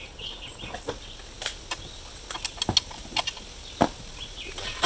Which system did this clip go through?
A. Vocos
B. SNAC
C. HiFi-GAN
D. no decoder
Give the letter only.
D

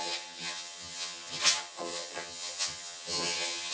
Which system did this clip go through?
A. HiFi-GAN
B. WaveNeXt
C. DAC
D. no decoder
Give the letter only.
A